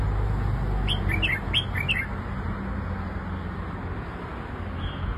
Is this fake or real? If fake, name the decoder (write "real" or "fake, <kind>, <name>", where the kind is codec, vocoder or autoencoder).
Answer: real